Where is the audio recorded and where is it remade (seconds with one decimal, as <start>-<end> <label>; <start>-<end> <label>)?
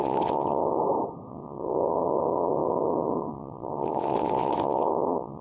0.0-0.8 remade; 0.8-1.3 recorded; 1.3-5.4 remade